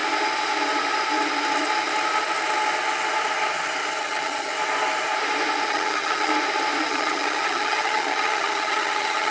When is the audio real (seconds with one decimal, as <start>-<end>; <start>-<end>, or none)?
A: 0.0-4.0; 4.5-5.7; 6.3-6.8